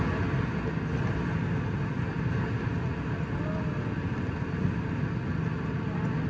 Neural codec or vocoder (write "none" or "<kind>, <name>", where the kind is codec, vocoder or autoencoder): none